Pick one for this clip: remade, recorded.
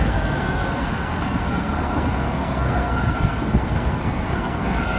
remade